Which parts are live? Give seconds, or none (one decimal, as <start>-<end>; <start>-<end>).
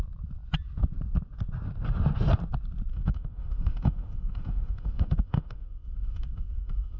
0.0-2.9